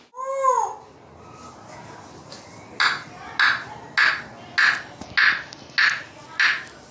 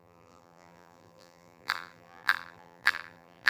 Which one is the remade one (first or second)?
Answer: second